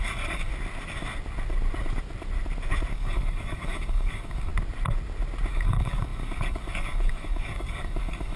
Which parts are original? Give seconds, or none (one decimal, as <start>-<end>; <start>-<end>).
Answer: 0.5-2.9; 4.5-5.5